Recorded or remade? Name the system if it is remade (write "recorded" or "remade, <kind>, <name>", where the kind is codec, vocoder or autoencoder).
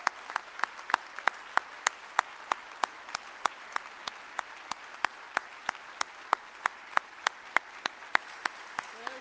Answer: recorded